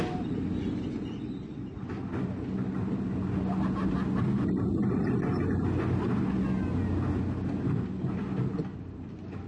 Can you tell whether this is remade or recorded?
recorded